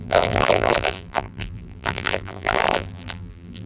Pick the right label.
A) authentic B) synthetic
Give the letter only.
B